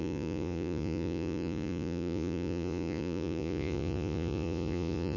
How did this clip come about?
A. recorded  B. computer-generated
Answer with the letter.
B